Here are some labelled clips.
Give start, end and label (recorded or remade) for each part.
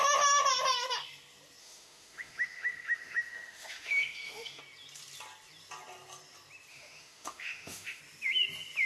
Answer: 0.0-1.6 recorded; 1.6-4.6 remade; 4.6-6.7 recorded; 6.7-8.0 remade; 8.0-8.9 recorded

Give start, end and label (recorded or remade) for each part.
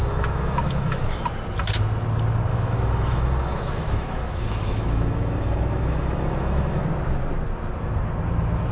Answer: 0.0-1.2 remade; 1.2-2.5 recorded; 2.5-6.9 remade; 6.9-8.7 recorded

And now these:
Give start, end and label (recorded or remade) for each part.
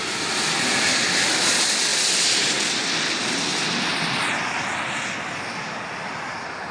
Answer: 0.0-6.7 recorded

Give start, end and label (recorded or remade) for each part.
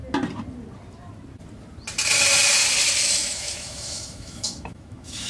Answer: 0.0-3.2 recorded; 3.2-5.3 remade